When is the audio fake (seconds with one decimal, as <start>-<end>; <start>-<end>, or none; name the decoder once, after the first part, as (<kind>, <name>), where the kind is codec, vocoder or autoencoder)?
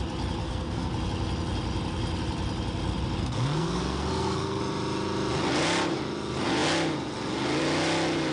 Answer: 0.4-0.9 (codec, SNAC); 3.2-4.6